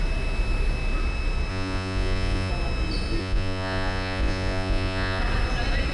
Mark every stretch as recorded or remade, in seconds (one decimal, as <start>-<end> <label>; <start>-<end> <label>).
0.0-1.5 recorded; 1.5-2.5 remade; 2.5-3.2 recorded; 3.2-5.2 remade; 5.2-5.9 recorded